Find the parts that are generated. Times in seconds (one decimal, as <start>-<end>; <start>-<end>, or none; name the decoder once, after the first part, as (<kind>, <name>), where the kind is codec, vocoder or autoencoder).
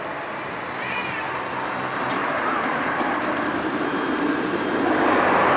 2.2-5.6 (vocoder, BigVGAN v2)